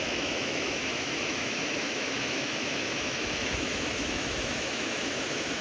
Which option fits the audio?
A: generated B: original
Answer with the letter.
A